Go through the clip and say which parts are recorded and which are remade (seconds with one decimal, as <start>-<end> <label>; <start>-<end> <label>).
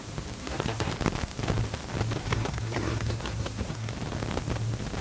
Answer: 0.0-0.4 recorded; 0.4-0.9 remade; 0.9-2.2 recorded; 2.2-3.9 remade; 3.9-5.0 recorded